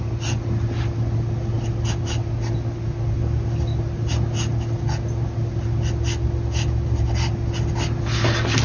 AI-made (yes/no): no